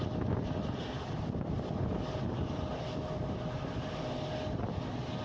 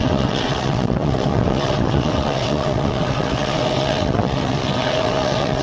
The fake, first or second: second